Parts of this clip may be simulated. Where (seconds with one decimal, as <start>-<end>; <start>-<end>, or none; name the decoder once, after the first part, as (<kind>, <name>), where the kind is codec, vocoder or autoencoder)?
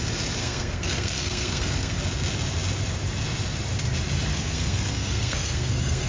0.4-2.0 (codec, SNAC); 4.3-6.1